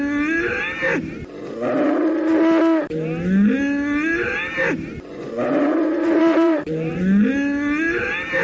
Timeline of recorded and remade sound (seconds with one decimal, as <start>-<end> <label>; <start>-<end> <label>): 0.0-5.1 recorded; 5.1-7.0 remade; 7.0-8.4 recorded